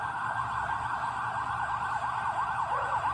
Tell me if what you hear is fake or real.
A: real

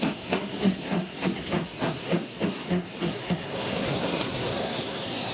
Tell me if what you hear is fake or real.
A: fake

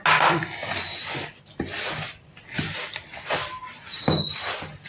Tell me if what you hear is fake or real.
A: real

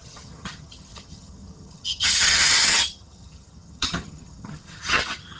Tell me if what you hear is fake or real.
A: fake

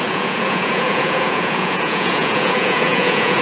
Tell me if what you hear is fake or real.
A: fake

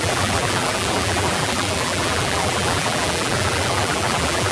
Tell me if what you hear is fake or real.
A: fake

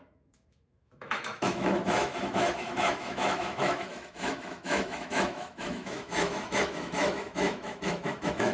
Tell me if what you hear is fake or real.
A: fake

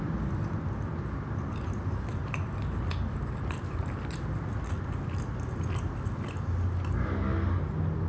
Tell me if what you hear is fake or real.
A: real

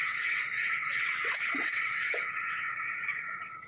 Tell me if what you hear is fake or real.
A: fake